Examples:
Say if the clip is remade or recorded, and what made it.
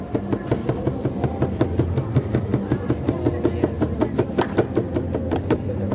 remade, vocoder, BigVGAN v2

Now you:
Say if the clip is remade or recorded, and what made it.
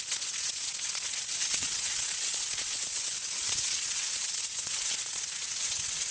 remade, vocoder, WaveNeXt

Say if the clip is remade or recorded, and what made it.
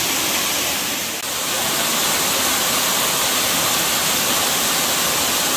recorded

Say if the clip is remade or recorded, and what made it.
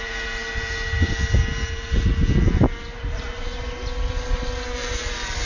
recorded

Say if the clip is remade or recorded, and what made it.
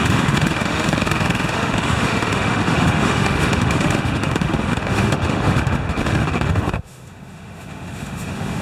remade, autoencoder, DAC-VAE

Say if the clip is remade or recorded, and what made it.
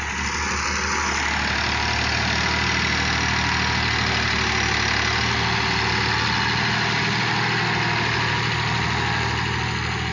recorded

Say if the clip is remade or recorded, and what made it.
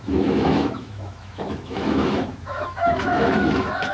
remade, autoencoder, DAC-VAE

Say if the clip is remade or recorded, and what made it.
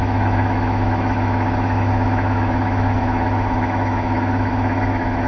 remade, autoencoder, DAC-VAE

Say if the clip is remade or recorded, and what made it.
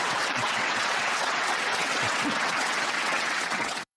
remade, vocoder, WaveNeXt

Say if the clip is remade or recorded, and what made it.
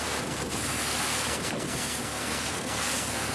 remade, codec, SNAC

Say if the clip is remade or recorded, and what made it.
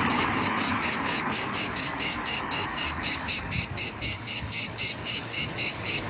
remade, codec, DAC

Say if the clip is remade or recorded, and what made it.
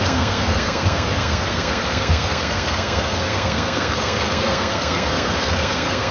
remade, codec, SNAC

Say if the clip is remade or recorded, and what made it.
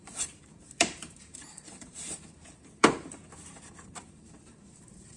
remade, vocoder, BigVGAN v2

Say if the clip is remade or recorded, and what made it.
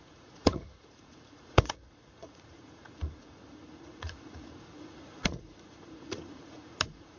remade, vocoder, Vocos